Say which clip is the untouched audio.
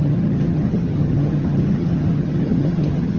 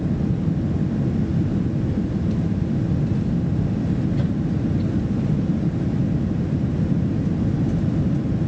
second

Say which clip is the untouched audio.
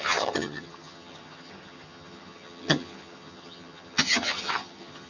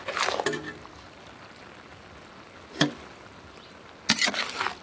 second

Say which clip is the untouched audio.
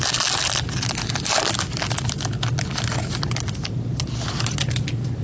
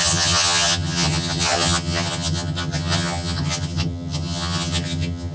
first